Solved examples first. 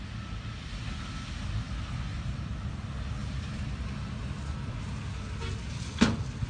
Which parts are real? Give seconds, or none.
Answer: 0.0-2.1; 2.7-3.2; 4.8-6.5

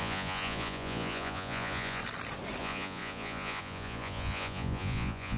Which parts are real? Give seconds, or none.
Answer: 2.0-2.6

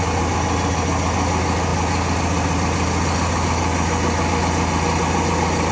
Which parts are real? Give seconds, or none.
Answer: 0.0-5.7

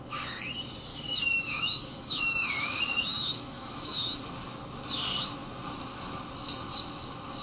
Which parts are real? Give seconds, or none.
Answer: 0.0-0.9; 4.2-7.4

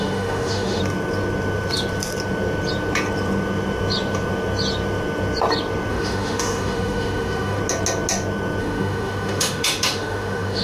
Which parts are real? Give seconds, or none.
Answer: 0.8-5.9; 7.6-8.6

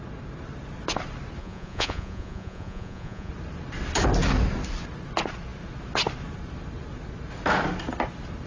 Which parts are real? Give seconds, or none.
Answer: 0.0-1.4; 3.3-8.5

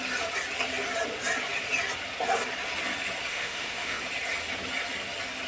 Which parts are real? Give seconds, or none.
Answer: 0.0-3.3; 4.0-5.5

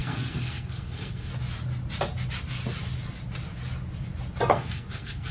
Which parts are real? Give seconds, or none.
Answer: 1.3-4.5